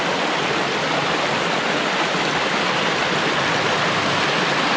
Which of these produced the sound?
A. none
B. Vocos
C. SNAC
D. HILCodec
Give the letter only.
A